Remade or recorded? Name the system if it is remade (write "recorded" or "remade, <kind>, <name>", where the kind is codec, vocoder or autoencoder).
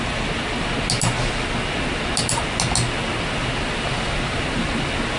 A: recorded